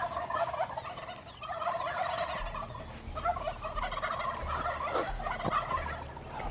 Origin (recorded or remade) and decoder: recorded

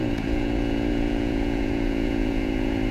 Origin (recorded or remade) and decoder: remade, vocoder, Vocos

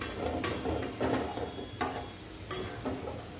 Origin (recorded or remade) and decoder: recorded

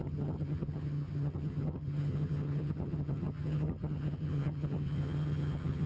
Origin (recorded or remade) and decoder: remade, vocoder, HiFi-GAN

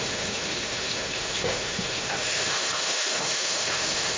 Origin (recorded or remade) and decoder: remade, autoencoder, DAC-VAE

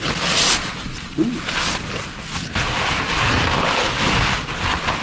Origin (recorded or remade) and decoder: recorded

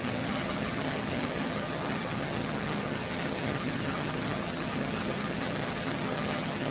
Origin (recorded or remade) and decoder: remade, vocoder, HiFi-GAN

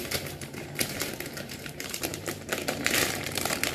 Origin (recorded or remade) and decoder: remade, vocoder, BigVGAN v2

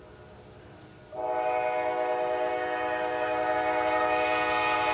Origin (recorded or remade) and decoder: recorded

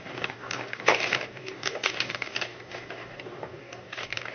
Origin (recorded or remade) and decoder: remade, codec, DAC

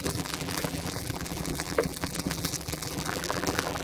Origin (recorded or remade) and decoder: remade, vocoder, BigVGAN v2